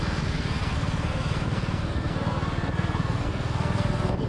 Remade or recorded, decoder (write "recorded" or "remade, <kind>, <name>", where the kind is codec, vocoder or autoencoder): remade, codec, SNAC